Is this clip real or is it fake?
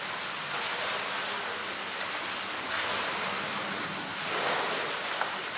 real